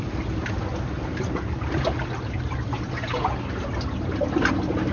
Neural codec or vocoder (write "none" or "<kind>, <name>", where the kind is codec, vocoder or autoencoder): none